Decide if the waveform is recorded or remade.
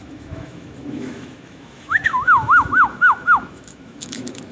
remade